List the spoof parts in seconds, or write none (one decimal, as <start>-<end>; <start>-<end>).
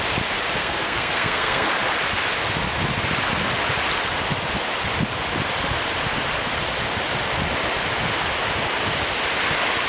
0.6-1.7